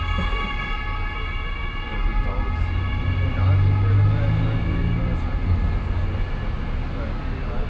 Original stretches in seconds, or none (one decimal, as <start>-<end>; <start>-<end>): 0.0-7.7